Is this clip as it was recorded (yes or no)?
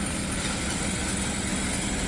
yes